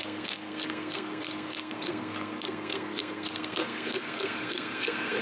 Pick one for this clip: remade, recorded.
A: remade